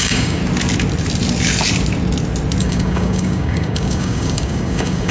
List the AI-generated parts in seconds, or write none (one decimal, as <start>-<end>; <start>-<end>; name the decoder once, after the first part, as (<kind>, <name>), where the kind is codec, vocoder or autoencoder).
0.0-0.4 (codec, DAC); 2.6-5.1